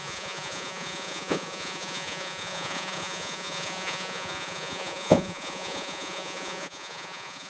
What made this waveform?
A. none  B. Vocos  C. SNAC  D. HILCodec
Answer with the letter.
B